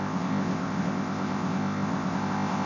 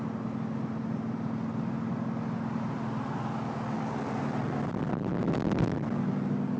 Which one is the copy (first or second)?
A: first